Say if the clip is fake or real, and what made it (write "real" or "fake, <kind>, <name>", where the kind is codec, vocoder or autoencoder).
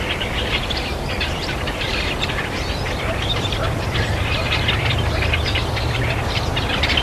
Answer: fake, vocoder, BigVGAN v2